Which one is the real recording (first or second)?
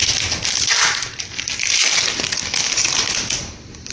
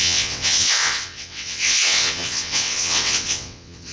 first